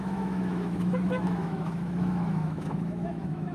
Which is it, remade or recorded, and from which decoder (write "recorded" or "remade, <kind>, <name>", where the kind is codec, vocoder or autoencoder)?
remade, autoencoder, DAC-VAE